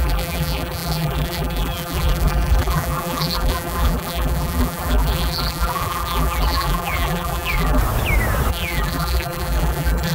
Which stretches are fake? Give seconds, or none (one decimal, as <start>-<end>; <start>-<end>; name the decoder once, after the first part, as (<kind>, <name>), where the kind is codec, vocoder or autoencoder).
0.0-7.8 (vocoder, BigVGAN v2); 8.5-10.1